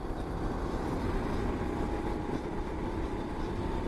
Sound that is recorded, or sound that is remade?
recorded